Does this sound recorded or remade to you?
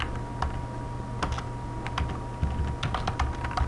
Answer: recorded